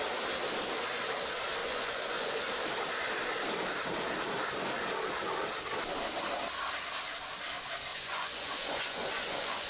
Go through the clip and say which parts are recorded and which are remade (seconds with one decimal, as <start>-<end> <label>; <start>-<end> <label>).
0.0-1.6 recorded; 1.6-2.4 remade; 2.4-7.9 recorded; 7.9-9.7 remade